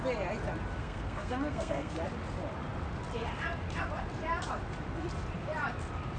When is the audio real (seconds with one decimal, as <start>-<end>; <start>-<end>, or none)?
0.0-0.8; 1.9-6.2